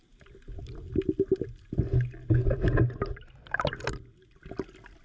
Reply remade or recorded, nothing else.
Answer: recorded